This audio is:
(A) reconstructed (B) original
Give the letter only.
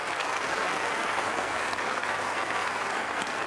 A